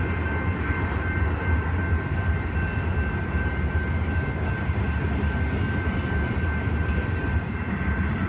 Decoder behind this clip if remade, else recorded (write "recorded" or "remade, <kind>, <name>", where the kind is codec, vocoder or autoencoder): recorded